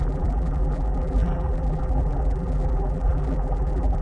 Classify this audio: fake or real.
fake